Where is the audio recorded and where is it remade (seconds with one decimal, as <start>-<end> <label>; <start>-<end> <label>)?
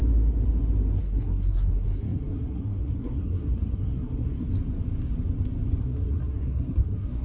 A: 0.0-1.0 recorded; 1.0-4.5 remade; 4.5-5.8 recorded; 5.8-7.2 remade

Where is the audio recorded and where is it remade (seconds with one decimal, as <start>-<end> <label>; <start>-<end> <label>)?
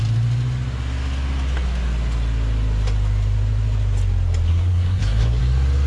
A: 0.0-4.5 recorded; 4.5-5.4 remade; 5.4-5.9 recorded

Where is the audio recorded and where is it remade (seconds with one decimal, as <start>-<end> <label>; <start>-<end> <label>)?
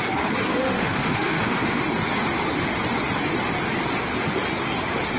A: 0.0-0.5 recorded; 0.5-1.8 remade; 1.8-5.2 recorded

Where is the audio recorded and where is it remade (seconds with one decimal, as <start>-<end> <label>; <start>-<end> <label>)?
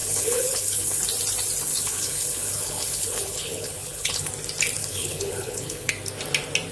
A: 0.0-1.0 remade; 1.0-1.7 recorded; 1.7-4.3 remade; 4.3-4.8 recorded; 4.8-5.9 remade; 5.9-6.7 recorded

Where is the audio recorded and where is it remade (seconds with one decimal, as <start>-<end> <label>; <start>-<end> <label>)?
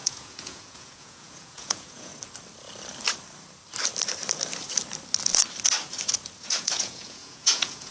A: 0.0-2.1 remade; 2.1-6.4 recorded; 6.4-7.9 remade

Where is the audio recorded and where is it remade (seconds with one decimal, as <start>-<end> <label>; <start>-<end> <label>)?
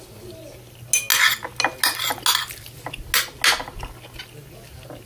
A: 0.0-5.1 recorded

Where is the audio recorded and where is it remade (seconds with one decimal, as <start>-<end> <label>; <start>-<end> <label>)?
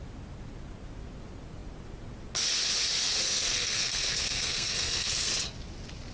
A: 0.0-3.0 recorded; 3.0-5.3 remade; 5.3-6.1 recorded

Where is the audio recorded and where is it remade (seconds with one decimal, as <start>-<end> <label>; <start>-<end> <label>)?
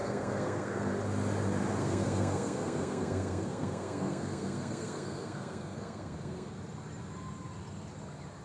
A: 0.0-0.9 remade; 0.9-1.8 recorded; 1.8-6.5 remade; 6.5-8.4 recorded